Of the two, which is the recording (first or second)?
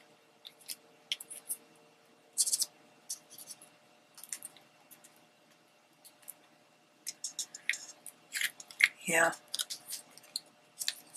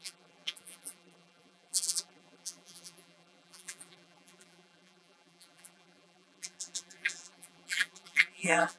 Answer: first